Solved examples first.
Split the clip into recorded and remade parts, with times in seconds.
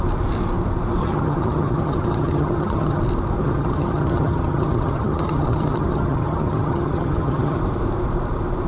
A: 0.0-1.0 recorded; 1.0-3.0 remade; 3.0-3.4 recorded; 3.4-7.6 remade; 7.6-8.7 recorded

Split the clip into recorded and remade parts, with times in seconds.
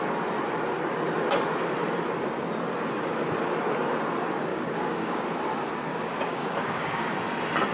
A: 0.0-4.5 recorded; 4.5-5.2 remade; 5.2-5.9 recorded; 5.9-7.0 remade; 7.0-7.7 recorded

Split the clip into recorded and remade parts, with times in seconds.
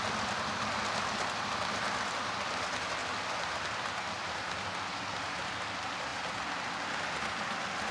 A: 0.0-3.0 recorded; 3.0-4.3 remade; 4.3-7.9 recorded